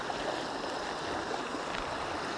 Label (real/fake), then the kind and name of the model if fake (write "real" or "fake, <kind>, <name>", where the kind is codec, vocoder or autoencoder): real